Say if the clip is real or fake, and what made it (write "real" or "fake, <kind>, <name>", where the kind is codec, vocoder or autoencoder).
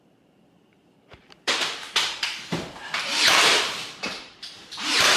fake, vocoder, BigVGAN v2